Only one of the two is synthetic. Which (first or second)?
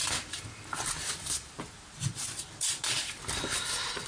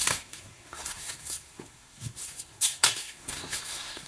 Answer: second